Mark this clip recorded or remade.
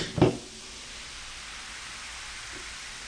recorded